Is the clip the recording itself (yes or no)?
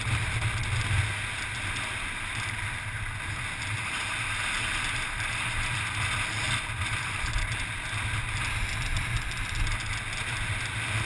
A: yes